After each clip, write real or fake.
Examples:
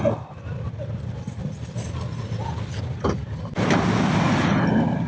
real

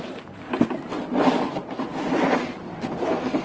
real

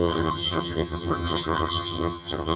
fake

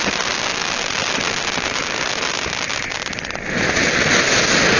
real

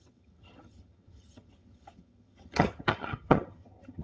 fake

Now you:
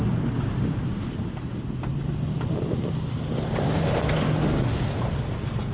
real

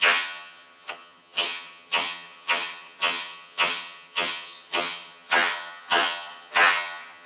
fake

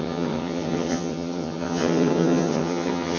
fake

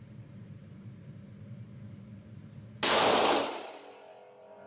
real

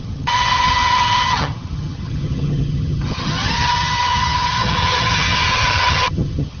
fake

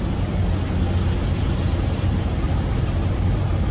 real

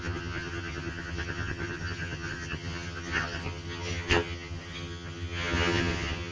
fake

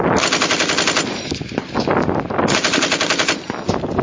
real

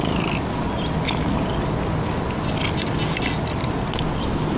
real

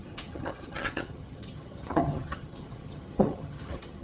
fake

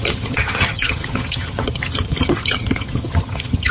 fake